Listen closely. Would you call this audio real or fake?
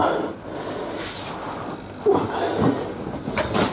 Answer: real